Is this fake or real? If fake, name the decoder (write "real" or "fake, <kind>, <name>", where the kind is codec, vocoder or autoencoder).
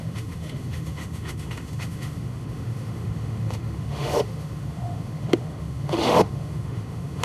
fake, autoencoder, DAC-VAE